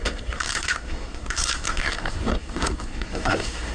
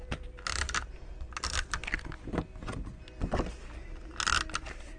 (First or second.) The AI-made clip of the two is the first